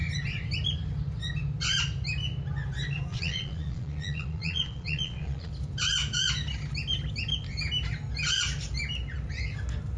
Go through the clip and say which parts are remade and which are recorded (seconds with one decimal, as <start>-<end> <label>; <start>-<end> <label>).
0.0-3.1 recorded; 3.1-5.5 remade; 5.5-10.0 recorded